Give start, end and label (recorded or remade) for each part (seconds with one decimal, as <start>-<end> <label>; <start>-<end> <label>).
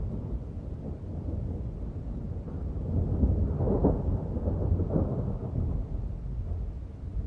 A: 0.0-7.3 recorded